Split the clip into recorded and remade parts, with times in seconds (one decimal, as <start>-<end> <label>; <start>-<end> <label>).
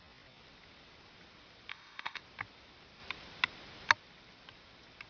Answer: 0.0-1.7 recorded; 1.7-2.2 remade; 2.2-5.1 recorded